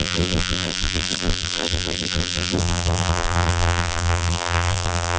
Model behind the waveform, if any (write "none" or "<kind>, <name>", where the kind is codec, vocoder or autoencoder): vocoder, BigVGAN v2